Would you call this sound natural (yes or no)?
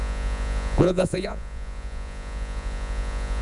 no